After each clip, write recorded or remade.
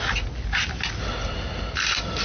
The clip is recorded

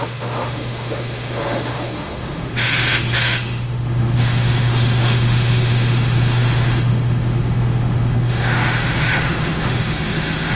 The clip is remade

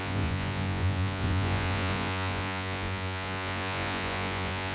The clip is remade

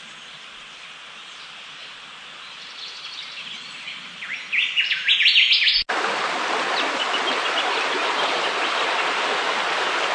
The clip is recorded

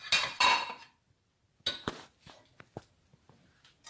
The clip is recorded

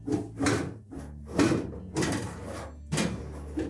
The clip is recorded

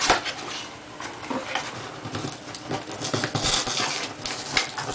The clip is recorded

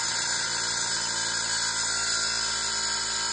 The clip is recorded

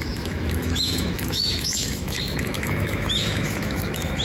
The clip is remade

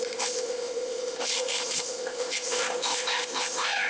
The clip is remade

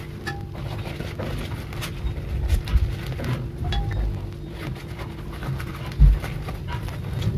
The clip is recorded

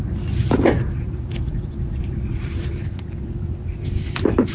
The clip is recorded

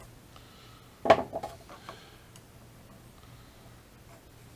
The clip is recorded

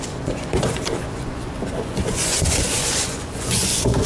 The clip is remade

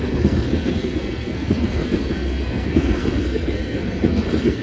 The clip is remade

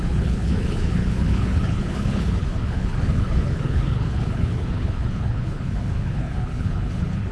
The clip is remade